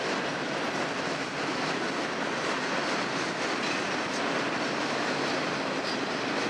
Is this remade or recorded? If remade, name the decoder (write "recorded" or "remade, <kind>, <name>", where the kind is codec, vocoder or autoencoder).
recorded